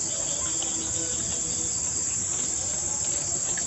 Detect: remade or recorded recorded